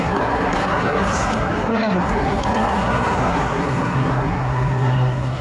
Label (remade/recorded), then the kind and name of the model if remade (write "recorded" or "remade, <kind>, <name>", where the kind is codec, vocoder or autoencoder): remade, codec, SNAC